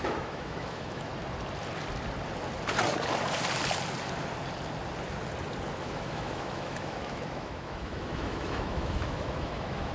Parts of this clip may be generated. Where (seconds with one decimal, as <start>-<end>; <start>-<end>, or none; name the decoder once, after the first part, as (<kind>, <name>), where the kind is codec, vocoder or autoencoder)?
0.0-1.1 (autoencoder, DAC-VAE); 5.8-9.9